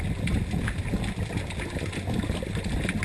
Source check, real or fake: real